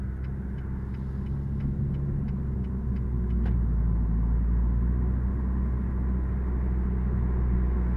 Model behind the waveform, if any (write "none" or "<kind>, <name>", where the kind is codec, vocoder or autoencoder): none